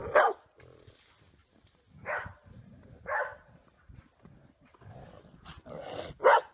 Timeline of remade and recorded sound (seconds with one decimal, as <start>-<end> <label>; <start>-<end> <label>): 0.0-1.4 recorded; 1.4-4.7 remade; 4.7-6.5 recorded

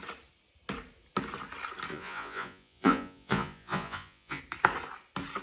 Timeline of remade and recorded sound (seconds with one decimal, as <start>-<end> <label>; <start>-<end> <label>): 0.0-1.9 recorded; 1.9-4.4 remade; 4.4-5.4 recorded

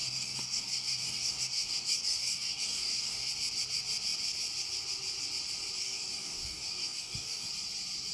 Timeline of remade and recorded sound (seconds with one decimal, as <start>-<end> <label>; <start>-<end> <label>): 0.0-3.3 remade; 3.3-5.8 recorded; 5.8-7.5 remade; 7.5-8.1 recorded

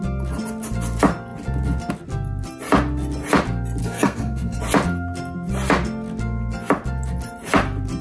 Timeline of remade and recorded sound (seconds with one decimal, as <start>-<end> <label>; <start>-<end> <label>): 0.0-3.8 recorded; 3.8-4.6 remade; 4.6-8.0 recorded

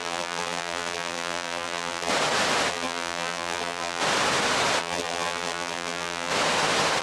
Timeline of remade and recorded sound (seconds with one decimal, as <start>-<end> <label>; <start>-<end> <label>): 0.0-2.1 remade; 2.1-2.7 recorded; 2.7-4.0 remade; 4.0-4.8 recorded; 4.8-6.3 remade; 6.3-7.0 recorded